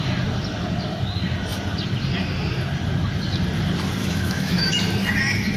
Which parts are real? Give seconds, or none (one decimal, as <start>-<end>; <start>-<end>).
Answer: 0.0-4.0; 4.8-5.6